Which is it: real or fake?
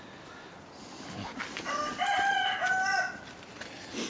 real